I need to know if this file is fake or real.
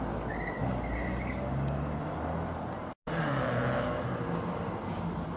real